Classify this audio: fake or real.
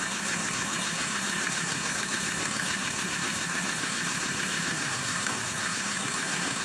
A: fake